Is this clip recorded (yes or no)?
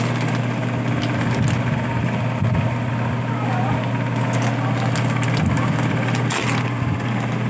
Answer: yes